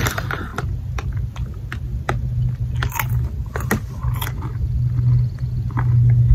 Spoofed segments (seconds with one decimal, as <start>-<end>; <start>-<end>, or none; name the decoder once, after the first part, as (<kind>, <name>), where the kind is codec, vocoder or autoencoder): none